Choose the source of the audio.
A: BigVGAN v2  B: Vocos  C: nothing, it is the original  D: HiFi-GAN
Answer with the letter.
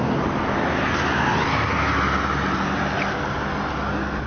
C